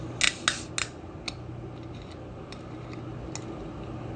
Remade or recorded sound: recorded